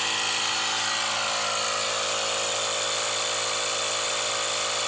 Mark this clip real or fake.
real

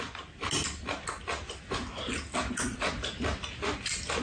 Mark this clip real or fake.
real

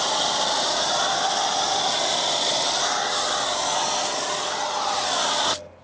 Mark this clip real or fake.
real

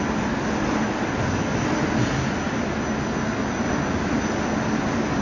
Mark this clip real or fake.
real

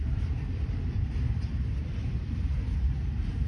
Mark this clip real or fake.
fake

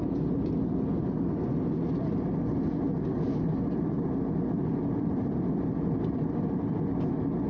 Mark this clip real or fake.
real